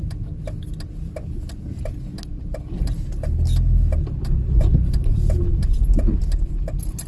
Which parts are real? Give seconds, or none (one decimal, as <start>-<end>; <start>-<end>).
0.0-7.1